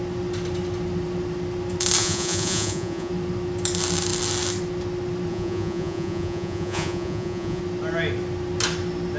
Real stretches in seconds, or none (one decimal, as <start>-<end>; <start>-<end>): 0.0-2.0; 3.1-5.3; 7.6-9.2